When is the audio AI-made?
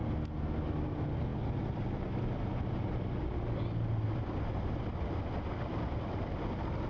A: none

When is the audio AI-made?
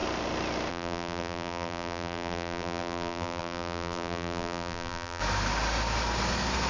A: 0.7-5.2 (vocoder, BigVGAN v2)